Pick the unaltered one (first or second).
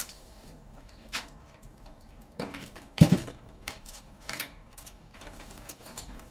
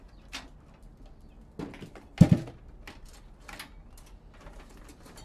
second